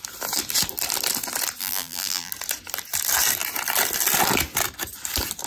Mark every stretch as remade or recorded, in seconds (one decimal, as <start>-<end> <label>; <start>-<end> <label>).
0.0-1.6 recorded; 1.6-2.3 remade; 2.3-5.5 recorded